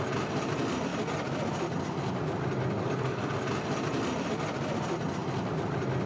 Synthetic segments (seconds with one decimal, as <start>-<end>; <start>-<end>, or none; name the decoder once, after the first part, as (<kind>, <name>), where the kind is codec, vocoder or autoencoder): 5.2-6.1 (vocoder, BigVGAN v2)